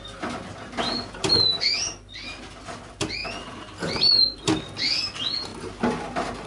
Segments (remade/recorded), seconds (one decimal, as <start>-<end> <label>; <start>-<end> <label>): 0.0-6.5 recorded